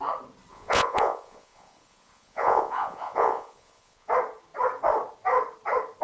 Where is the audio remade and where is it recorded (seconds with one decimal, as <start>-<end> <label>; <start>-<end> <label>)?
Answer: 0.0-0.5 recorded; 0.5-4.1 remade; 4.1-6.0 recorded